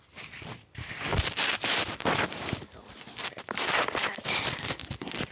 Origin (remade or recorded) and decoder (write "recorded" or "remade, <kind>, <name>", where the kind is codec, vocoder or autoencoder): remade, vocoder, BigVGAN v2